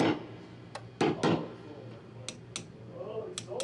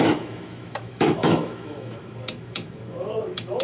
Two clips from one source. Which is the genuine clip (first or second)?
first